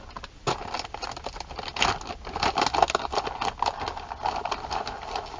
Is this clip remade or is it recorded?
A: recorded